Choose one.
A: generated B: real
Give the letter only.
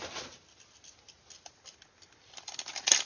B